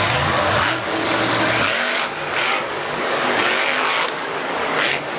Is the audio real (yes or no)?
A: no